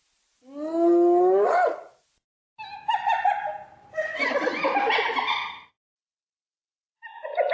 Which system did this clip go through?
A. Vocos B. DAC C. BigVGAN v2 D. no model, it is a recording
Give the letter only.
D